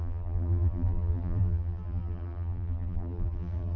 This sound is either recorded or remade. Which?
remade